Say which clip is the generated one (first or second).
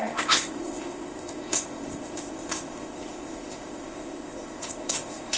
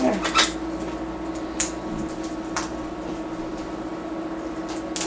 first